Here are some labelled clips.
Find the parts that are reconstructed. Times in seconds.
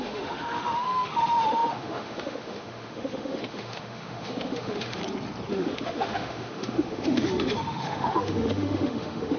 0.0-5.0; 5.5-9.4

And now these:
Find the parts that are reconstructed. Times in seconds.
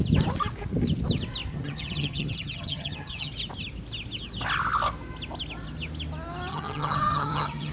1.5-3.3; 6.5-7.7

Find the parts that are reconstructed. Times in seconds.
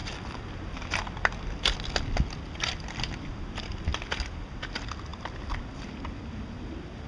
none